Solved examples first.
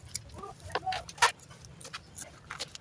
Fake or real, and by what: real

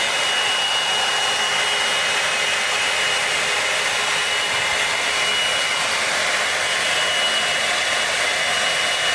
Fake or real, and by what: real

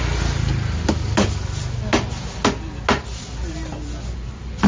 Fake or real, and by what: real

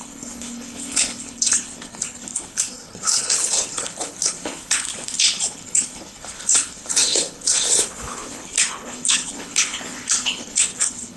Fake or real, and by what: fake, codec, HILCodec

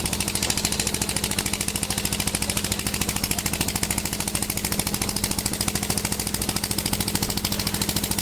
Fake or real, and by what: real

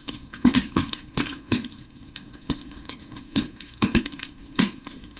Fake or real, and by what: fake, codec, SNAC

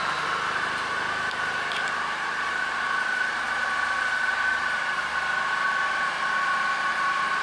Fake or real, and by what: fake, vocoder, BigVGAN v2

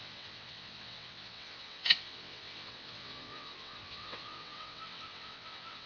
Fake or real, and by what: fake, vocoder, WaveNeXt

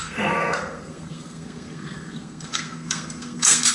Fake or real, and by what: fake, codec, SNAC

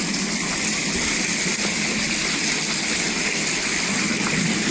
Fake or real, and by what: real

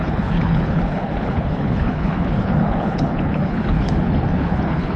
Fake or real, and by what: fake, codec, HILCodec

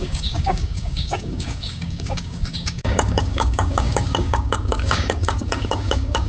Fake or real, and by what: fake, codec, DAC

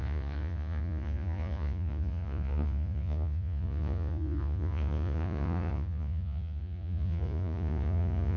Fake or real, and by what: fake, vocoder, Vocos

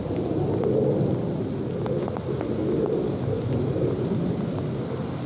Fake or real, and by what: real